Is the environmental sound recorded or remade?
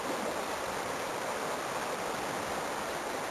recorded